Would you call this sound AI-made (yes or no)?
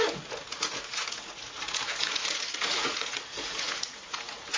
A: yes